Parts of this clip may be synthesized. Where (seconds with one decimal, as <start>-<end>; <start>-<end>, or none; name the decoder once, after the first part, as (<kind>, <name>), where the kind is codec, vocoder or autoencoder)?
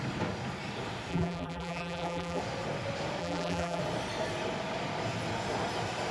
1.1-2.4 (vocoder, BigVGAN v2); 3.2-3.8